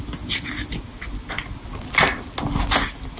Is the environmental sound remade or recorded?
recorded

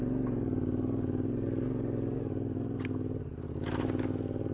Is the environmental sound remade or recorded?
recorded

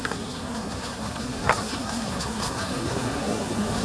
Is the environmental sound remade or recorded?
remade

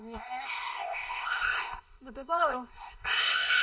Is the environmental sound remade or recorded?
remade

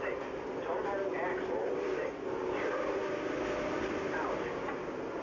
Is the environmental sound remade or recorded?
recorded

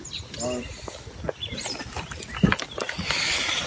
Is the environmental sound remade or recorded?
recorded